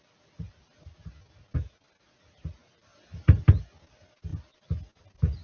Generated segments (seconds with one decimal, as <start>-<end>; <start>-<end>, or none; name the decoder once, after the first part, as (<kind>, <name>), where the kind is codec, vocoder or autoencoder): none